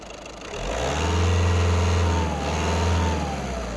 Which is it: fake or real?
real